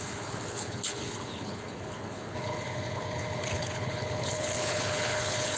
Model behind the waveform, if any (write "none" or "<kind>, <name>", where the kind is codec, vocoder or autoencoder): codec, HILCodec